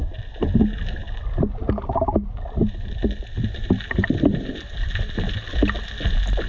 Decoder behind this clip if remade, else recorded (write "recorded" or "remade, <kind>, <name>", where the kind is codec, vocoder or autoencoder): recorded